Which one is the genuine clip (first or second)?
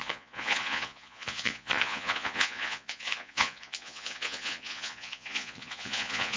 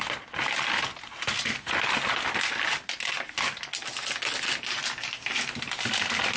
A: second